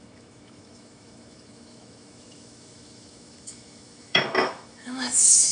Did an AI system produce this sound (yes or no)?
yes